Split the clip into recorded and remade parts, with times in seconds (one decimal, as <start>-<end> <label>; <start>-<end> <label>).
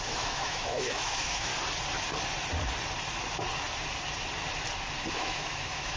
0.0-1.5 remade; 1.5-5.1 recorded; 5.1-6.0 remade